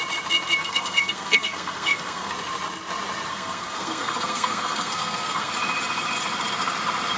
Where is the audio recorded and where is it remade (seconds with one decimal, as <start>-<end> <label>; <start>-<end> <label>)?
0.0-0.6 recorded; 0.6-2.3 remade; 2.3-3.3 recorded; 3.3-5.5 remade; 5.5-7.2 recorded